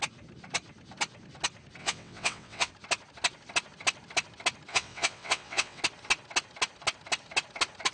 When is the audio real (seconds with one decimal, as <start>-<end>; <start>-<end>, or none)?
0.0-1.8; 2.7-4.7; 5.8-7.9

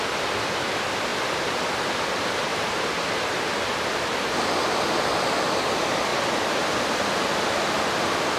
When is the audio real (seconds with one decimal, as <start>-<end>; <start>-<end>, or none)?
0.0-8.4

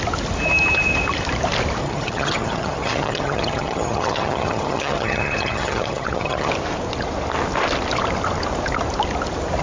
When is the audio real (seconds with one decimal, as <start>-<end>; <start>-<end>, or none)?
0.0-1.8; 6.5-9.6

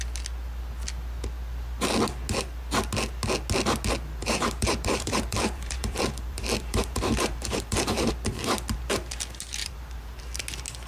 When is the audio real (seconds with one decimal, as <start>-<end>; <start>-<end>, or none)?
0.0-4.2; 8.1-9.6; 10.2-10.9

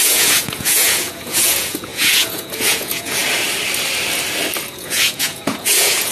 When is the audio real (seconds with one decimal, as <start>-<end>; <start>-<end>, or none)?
3.2-4.7